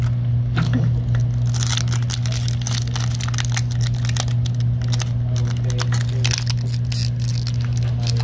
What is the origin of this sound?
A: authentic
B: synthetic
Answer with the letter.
A